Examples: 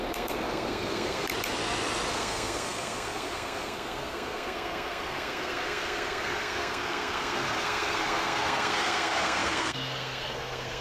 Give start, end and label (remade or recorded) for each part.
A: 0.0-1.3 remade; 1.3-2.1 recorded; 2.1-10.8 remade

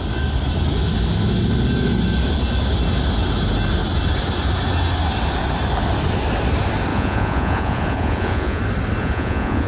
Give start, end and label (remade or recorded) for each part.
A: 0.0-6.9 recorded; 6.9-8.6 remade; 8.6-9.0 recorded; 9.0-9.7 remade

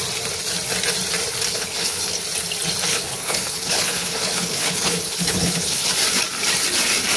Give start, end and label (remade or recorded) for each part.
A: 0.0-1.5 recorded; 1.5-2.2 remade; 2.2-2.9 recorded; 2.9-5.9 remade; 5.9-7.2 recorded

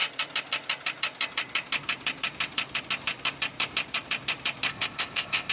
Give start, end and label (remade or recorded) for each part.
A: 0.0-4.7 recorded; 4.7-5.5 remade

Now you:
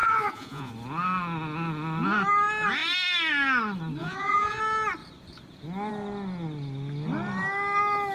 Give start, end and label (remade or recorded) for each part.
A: 0.0-0.7 remade; 0.7-4.0 recorded; 4.0-4.6 remade; 4.6-8.1 recorded

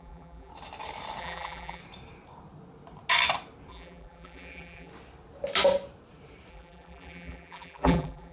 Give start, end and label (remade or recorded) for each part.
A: 0.0-0.5 remade; 0.5-1.2 recorded; 1.2-1.8 remade; 1.8-3.7 recorded; 3.7-4.9 remade; 4.9-6.5 recorded; 6.5-8.3 remade